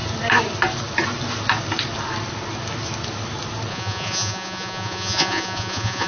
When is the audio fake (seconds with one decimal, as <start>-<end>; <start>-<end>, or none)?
3.7-6.1